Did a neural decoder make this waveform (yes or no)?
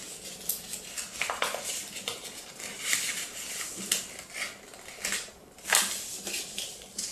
no